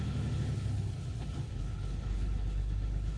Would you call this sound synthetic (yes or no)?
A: yes